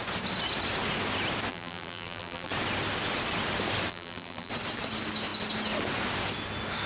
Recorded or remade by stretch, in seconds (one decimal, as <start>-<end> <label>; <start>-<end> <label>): 0.0-1.5 recorded; 1.5-2.5 remade; 2.5-3.9 recorded; 3.9-4.5 remade; 4.5-6.9 recorded